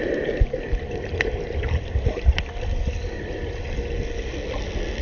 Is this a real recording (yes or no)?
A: yes